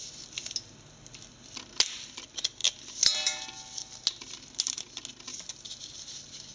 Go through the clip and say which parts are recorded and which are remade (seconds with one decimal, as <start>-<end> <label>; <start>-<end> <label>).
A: 0.0-6.5 recorded